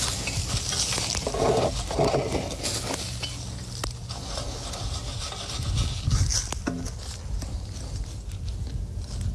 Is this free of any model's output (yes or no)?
yes